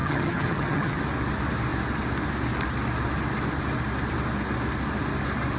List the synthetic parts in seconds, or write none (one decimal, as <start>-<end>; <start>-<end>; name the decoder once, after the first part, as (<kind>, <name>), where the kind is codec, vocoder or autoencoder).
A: 0.0-1.0 (vocoder, HiFi-GAN)